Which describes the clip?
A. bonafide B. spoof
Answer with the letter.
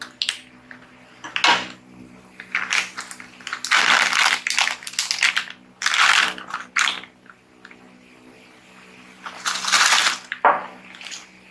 A